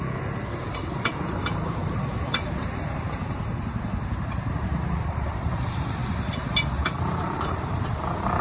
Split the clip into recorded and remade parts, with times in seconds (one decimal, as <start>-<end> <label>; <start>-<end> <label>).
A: 0.0-6.0 remade; 6.0-6.8 recorded; 6.8-8.4 remade

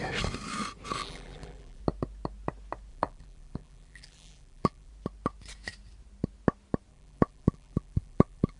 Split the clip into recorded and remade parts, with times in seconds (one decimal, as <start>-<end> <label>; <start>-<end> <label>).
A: 0.0-1.0 recorded; 1.0-1.8 remade; 1.8-2.9 recorded; 2.9-4.9 remade; 4.9-6.9 recorded; 6.9-8.6 remade